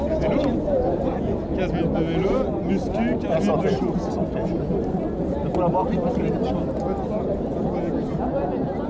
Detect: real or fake real